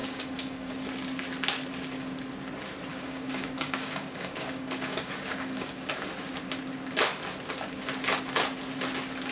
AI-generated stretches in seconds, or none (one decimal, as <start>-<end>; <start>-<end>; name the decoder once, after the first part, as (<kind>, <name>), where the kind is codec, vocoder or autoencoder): 0.0-0.7 (codec, DAC); 2.9-6.1